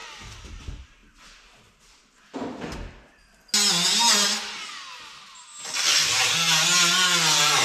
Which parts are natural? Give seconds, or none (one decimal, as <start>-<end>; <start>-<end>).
0.0-7.6